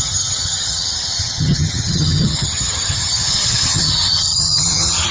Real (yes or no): no